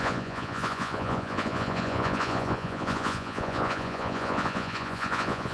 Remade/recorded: remade